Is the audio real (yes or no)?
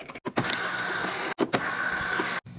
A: yes